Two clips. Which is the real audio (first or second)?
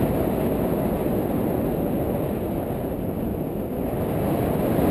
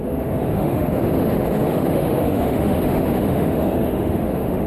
first